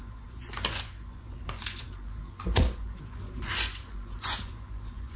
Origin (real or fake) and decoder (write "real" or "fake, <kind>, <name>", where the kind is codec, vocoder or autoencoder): fake, vocoder, Vocos